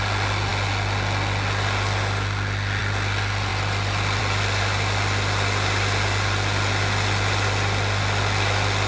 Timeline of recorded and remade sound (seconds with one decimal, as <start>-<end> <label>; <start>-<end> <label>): 0.0-8.9 recorded